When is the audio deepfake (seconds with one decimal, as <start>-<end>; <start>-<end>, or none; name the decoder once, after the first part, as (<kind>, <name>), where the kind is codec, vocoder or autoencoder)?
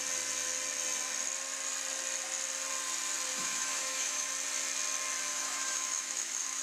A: 3.3-4.3 (autoencoder, DAC-VAE); 5.3-6.6